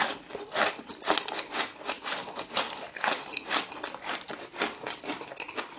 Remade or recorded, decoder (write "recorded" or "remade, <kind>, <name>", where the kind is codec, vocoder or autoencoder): recorded